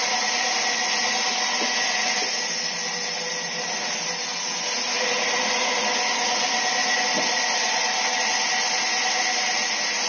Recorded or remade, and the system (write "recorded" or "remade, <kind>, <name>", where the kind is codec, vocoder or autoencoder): recorded